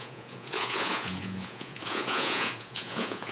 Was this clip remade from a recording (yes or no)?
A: yes